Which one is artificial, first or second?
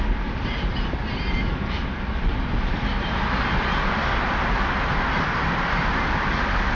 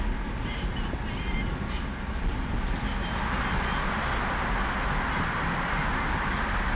first